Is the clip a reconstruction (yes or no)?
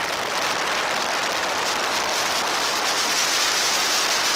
no